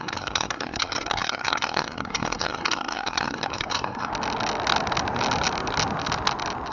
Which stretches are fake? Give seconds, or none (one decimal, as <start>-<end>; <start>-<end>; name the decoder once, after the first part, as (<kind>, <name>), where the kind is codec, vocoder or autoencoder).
0.0-4.1 (codec, SNAC)